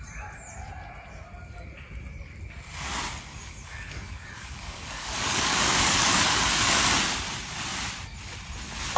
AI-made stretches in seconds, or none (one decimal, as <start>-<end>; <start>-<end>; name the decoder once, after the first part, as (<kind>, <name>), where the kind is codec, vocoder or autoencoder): 3.3-6.9 (codec, DAC)